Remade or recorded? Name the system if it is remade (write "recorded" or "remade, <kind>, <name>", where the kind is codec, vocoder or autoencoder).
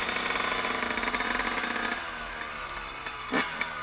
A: recorded